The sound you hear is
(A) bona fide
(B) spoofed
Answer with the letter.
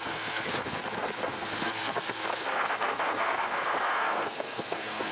B